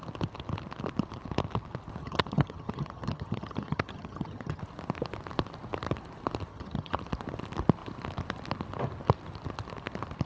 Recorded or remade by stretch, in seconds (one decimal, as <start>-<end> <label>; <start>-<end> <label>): 0.0-2.0 recorded; 2.0-4.6 remade; 4.6-6.5 recorded; 6.5-7.0 remade; 7.0-10.3 recorded